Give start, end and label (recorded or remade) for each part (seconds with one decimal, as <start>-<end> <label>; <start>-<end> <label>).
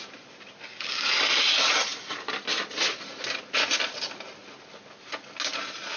0.0-6.0 recorded